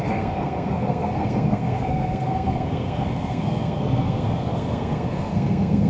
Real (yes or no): no